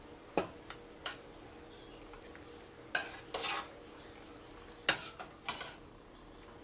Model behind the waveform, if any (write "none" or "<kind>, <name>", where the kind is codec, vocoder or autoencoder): none